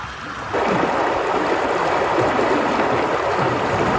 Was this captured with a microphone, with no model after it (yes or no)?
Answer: yes